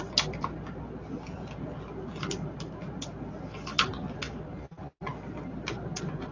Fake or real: real